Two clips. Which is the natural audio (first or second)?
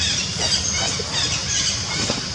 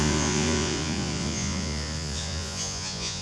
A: first